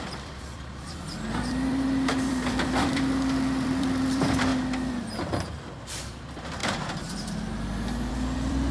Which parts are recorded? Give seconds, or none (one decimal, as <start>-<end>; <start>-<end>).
4.5-5.6